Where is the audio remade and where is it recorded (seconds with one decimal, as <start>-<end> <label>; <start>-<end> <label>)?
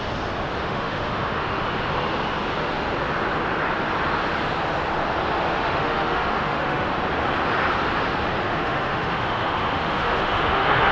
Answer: 0.0-0.6 recorded; 0.6-1.6 remade; 1.6-5.6 recorded; 5.6-6.9 remade; 6.9-8.5 recorded; 8.5-10.9 remade